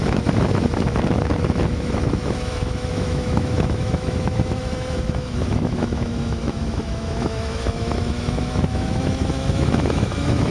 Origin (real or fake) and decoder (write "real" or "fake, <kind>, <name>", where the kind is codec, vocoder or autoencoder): fake, autoencoder, DAC-VAE